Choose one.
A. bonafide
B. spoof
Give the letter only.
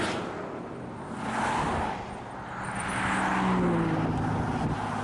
A